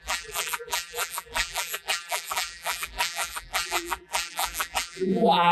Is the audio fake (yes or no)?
yes